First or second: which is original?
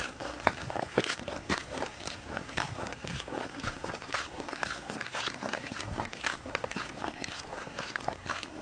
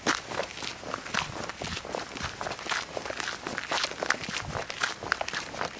second